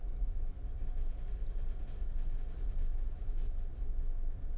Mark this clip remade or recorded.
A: recorded